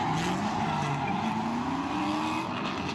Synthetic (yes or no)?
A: no